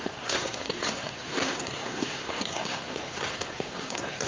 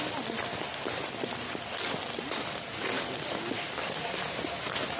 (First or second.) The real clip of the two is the second